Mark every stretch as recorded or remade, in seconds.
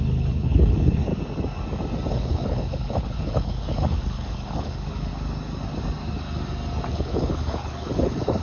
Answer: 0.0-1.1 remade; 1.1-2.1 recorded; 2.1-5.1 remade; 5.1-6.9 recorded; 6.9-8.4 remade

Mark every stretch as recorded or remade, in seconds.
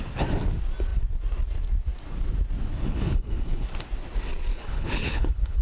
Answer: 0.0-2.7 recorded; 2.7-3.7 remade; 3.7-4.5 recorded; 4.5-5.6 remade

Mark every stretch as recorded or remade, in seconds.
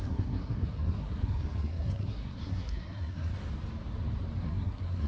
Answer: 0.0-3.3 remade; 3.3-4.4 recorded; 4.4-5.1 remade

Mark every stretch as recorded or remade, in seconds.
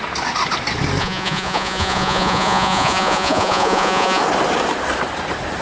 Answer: 0.0-1.0 recorded; 1.0-4.2 remade; 4.2-5.6 recorded